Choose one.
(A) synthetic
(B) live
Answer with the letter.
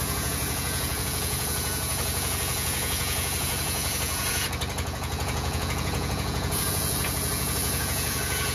A